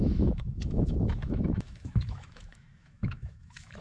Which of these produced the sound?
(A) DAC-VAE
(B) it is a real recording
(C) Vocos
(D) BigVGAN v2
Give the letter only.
A